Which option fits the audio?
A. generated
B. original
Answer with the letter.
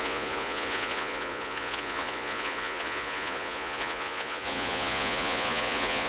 A